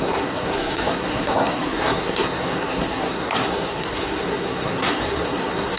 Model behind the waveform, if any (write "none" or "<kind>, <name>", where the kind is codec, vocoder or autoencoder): codec, SNAC